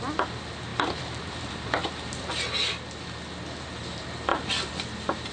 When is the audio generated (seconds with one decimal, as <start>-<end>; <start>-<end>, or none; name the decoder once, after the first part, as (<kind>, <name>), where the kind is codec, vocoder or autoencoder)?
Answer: 0.7-2.3 (vocoder, BigVGAN v2); 4.3-5.3